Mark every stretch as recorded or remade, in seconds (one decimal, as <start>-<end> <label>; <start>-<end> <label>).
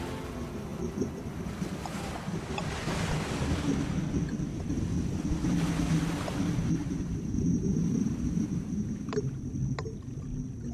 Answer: 0.0-6.8 recorded; 6.8-9.5 remade; 9.5-10.7 recorded